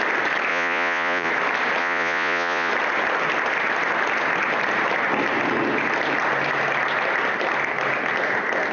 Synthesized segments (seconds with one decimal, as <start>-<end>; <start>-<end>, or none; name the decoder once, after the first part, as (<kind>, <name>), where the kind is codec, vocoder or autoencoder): 0.5-1.3 (vocoder, Vocos); 1.8-2.7